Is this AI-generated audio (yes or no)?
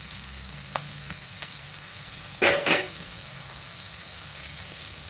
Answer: yes